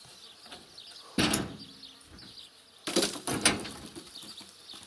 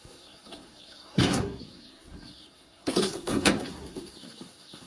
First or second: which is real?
first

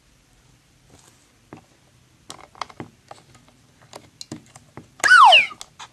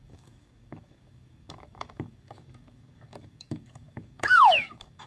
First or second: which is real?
first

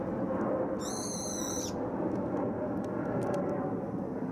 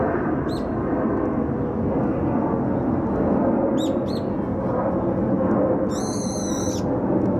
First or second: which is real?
second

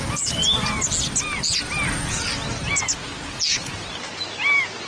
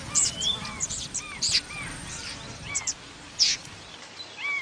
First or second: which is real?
first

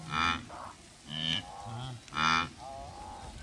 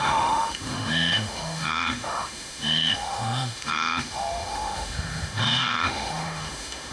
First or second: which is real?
first